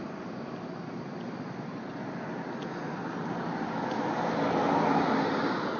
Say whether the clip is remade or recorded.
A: recorded